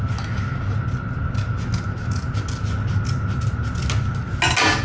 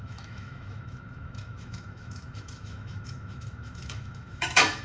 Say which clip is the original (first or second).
first